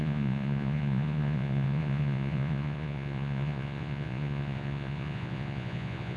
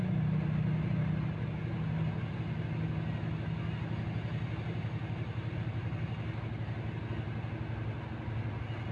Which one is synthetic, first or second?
first